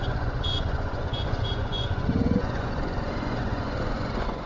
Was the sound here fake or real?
fake